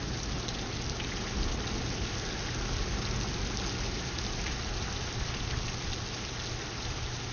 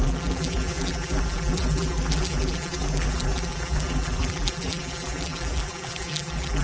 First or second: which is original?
first